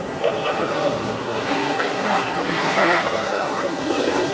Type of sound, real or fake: fake